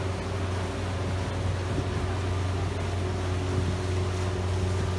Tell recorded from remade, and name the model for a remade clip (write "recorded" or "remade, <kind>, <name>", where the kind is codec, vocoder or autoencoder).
recorded